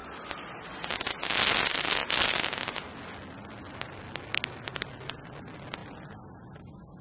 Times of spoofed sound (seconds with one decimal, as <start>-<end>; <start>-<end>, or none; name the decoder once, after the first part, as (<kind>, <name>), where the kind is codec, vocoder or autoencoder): 0.0-1.0 (vocoder, BigVGAN v2); 5.8-6.6